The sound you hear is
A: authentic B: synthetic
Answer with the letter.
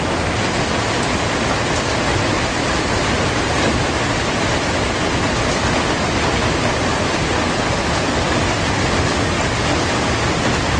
A